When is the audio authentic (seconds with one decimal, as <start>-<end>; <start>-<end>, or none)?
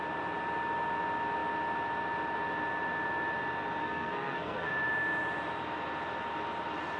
0.0-3.8; 4.7-7.0